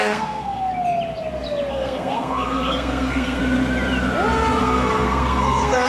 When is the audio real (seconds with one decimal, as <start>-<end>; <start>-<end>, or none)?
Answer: 0.7-1.7; 3.4-4.6